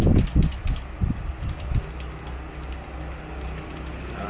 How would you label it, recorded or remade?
recorded